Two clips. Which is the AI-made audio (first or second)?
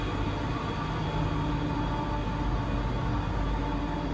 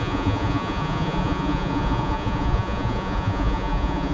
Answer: second